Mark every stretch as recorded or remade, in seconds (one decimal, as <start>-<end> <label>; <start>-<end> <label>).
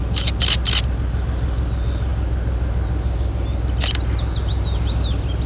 0.0-5.5 recorded